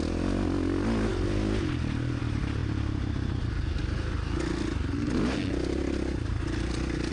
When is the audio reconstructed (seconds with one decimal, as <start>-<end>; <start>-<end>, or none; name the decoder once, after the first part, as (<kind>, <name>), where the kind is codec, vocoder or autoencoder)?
none